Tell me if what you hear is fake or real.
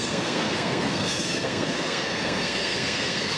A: fake